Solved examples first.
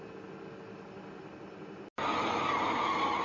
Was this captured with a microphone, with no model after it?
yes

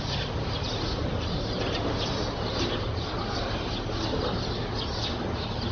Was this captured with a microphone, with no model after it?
yes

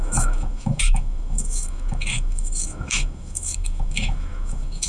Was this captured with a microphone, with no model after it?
no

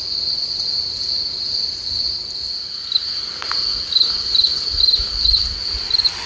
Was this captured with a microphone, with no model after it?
yes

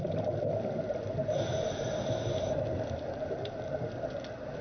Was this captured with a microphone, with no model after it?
yes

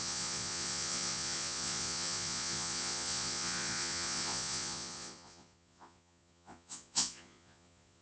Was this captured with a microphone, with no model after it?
no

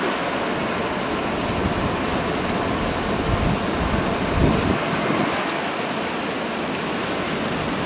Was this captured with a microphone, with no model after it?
yes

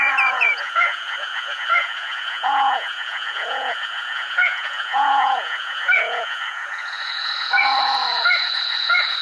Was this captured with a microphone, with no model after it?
no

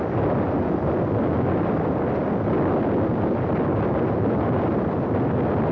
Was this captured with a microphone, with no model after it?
yes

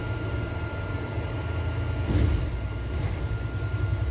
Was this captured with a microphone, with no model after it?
yes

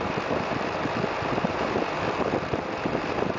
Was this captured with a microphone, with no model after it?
yes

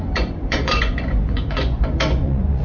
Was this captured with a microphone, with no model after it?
no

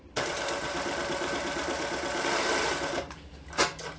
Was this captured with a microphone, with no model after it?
no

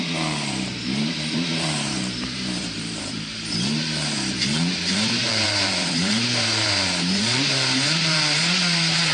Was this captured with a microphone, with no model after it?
no